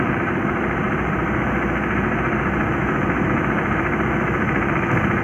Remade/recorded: recorded